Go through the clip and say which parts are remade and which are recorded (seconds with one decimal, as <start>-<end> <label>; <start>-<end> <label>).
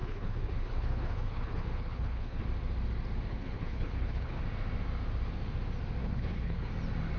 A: 0.0-2.4 remade; 2.4-3.3 recorded; 3.3-4.4 remade; 4.4-6.0 recorded; 6.0-6.7 remade; 6.7-7.2 recorded